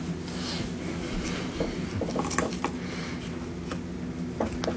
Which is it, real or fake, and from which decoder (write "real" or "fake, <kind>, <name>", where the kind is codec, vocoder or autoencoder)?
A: real